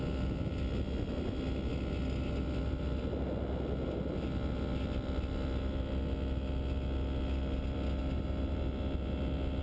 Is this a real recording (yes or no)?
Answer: yes